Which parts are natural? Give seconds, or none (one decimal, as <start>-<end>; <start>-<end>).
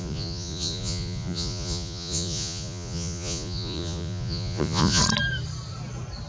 5.0-6.3